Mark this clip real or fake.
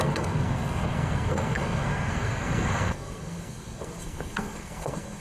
fake